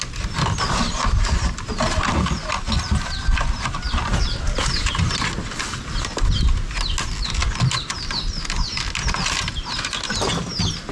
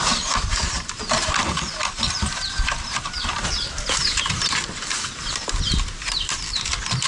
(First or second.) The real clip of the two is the first